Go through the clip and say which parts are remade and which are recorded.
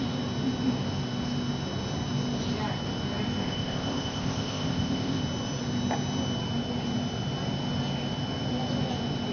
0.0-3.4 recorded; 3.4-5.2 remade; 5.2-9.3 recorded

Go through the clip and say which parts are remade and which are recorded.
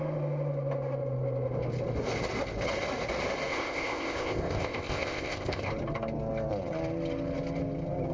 0.0-3.5 recorded; 3.5-5.7 remade; 5.7-8.1 recorded